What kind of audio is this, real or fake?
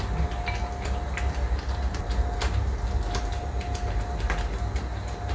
real